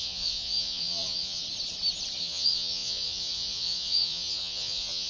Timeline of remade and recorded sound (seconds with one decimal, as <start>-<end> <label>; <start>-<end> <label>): 0.0-1.4 remade; 1.4-2.2 recorded; 2.2-5.1 remade

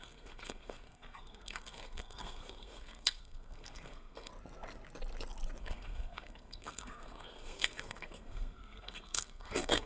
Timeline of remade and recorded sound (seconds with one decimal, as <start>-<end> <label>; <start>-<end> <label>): 0.0-4.3 remade; 4.3-5.6 recorded; 5.6-9.9 remade

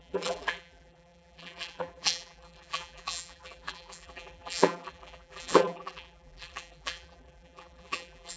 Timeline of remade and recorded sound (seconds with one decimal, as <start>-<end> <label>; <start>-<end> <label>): 0.0-8.4 remade

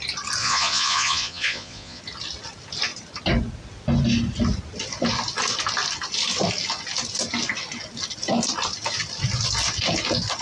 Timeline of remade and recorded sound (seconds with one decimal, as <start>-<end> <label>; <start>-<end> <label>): 0.0-0.4 recorded; 0.4-2.0 remade; 2.0-10.4 recorded

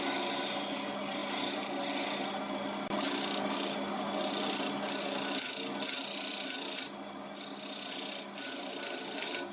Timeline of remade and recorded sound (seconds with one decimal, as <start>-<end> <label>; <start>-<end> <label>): 0.0-9.5 recorded